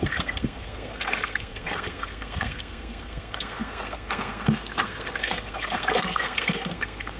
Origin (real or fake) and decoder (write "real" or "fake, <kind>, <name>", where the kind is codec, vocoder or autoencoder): fake, codec, SNAC